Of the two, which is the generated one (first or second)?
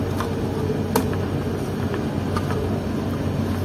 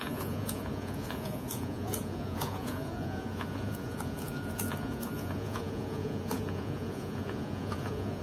second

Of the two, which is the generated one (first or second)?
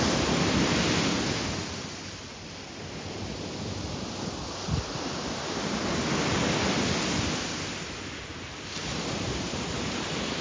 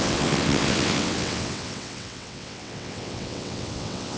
second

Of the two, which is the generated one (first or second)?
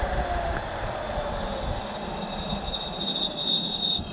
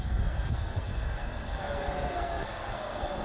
second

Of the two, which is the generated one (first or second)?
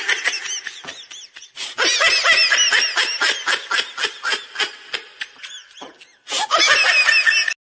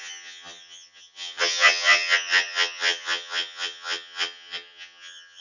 second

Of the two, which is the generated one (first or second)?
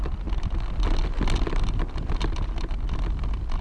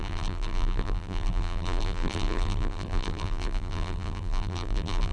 second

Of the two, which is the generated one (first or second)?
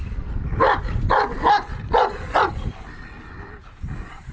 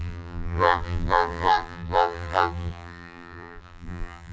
second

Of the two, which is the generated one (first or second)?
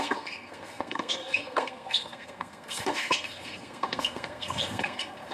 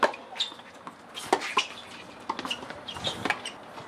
first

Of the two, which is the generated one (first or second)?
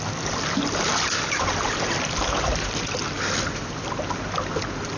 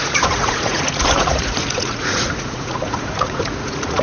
second